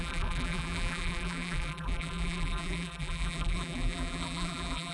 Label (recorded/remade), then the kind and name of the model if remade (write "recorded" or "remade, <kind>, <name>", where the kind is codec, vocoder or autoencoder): remade, vocoder, BigVGAN v2